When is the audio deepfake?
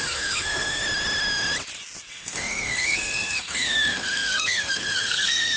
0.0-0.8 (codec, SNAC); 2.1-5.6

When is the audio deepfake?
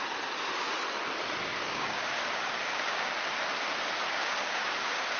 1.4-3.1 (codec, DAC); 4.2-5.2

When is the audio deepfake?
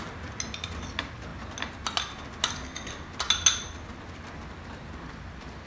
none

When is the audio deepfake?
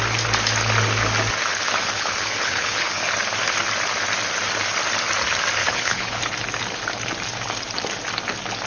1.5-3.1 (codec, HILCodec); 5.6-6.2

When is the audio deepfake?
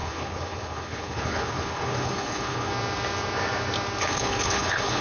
0.0-2.7 (codec, HILCodec); 4.0-5.0